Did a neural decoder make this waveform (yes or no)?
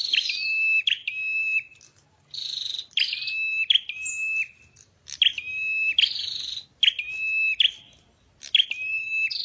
no